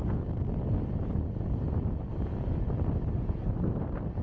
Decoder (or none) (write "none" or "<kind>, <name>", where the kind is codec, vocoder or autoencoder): none